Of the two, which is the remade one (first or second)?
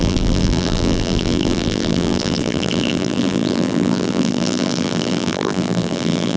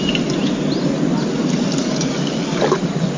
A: first